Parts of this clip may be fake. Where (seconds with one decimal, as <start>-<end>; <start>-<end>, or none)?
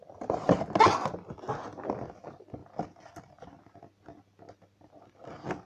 none